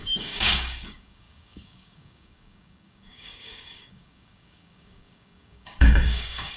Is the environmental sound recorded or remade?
remade